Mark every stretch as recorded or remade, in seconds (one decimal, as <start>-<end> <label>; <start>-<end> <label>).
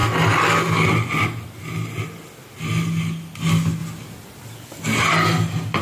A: 0.0-5.8 recorded